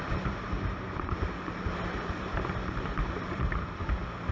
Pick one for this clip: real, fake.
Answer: fake